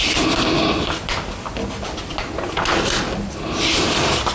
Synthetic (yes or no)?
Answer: no